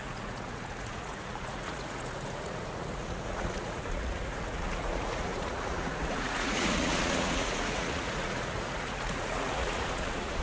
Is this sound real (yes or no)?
no